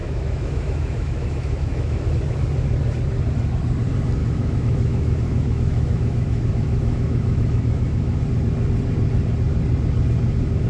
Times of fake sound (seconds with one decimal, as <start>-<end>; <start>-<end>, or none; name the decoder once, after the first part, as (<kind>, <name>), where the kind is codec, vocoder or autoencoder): 0.0-2.1 (autoencoder, DAC-VAE); 4.2-8.2